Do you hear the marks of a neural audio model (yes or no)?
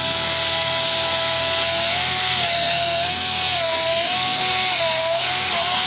yes